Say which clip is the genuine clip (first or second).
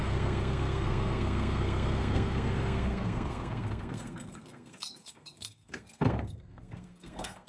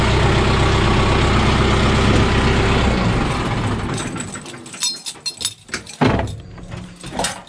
second